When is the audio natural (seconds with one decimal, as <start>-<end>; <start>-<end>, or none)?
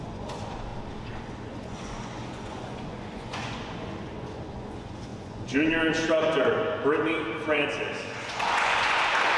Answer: 0.7-1.2